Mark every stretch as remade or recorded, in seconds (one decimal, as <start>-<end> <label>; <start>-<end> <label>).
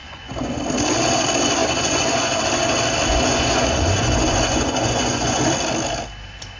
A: 0.0-0.6 remade; 0.6-1.6 recorded; 1.6-2.4 remade; 2.4-3.1 recorded; 3.1-5.5 remade; 5.5-6.6 recorded